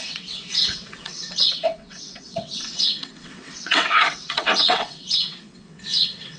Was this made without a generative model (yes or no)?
no